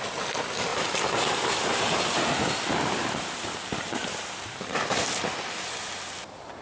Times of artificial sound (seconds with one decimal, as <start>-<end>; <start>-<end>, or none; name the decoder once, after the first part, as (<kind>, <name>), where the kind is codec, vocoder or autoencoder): 0.7-2.3 (vocoder, BigVGAN v2); 4.0-4.9